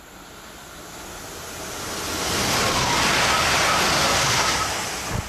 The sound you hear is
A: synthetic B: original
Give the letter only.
B